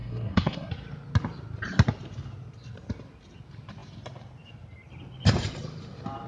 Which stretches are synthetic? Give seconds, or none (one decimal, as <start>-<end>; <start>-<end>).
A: 0.0-0.7